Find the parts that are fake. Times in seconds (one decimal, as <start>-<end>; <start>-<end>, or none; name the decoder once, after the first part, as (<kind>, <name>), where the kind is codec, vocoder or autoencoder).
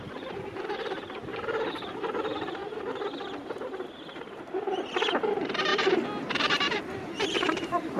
0.0-2.6 (vocoder, BigVGAN v2); 5.3-5.7; 6.3-8.0